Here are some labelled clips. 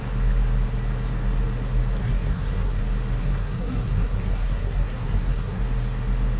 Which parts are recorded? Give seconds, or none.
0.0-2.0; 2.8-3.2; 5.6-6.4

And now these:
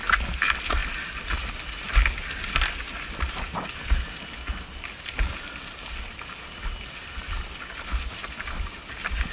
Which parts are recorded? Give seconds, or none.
0.0-9.3

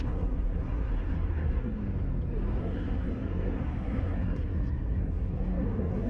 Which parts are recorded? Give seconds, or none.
1.8-2.6

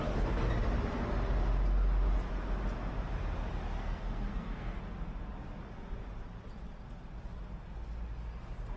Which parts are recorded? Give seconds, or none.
0.0-3.8; 4.8-8.8

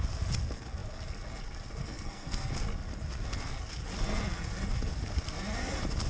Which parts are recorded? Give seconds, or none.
0.0-1.8; 2.5-6.1

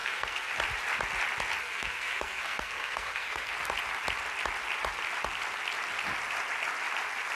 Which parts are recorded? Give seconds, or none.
0.5-1.6; 3.5-7.4